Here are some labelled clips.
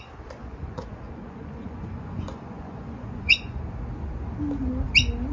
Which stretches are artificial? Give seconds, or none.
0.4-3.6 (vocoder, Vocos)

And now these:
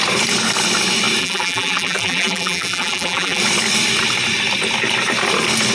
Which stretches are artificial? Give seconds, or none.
1.2-3.4 (vocoder, BigVGAN v2)

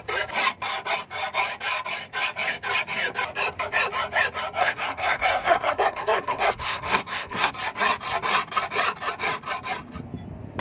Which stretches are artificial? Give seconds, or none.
4.6-7.5 (codec, SNAC)

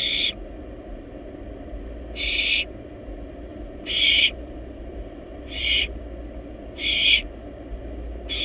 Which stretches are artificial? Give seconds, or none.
3.5-6.0 (vocoder, BigVGAN v2)